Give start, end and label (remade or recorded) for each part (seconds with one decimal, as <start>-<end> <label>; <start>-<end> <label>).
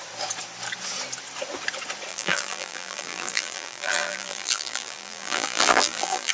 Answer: 0.0-2.1 recorded; 2.1-6.3 remade